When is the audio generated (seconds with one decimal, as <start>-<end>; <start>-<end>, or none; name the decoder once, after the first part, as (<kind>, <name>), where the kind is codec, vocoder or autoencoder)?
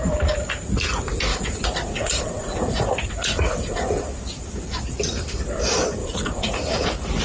1.3-4.0 (vocoder, Vocos); 6.0-6.7